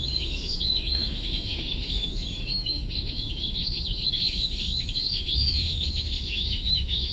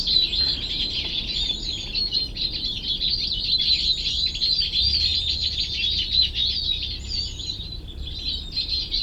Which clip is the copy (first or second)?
first